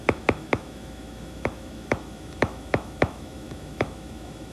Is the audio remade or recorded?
remade